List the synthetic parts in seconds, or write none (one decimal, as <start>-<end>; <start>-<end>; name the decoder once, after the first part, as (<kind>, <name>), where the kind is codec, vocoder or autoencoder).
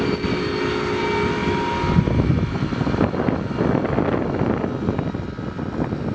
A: none